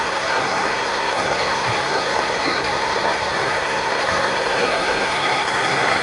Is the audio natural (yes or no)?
no